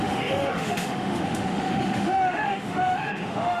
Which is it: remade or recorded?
remade